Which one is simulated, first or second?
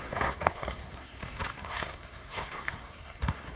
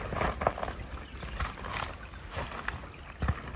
first